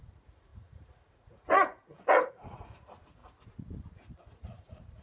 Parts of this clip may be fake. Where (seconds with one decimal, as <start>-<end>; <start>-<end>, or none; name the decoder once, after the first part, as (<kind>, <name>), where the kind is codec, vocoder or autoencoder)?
0.0-3.2 (vocoder, Vocos); 4.0-5.0